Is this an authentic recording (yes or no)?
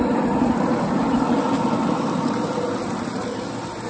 no